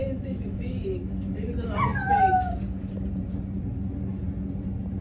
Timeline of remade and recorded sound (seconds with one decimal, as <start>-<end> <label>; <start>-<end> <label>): 0.0-1.5 remade; 1.5-5.0 recorded